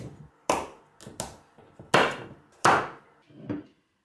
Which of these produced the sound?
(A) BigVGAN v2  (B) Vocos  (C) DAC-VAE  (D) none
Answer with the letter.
D